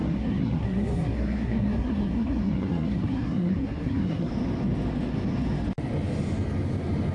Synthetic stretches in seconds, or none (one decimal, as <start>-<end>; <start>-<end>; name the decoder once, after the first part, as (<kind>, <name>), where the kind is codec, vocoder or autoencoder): 0.0-4.3 (codec, SNAC)